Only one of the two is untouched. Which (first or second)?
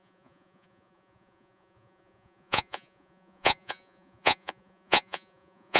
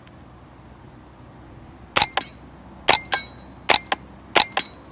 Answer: second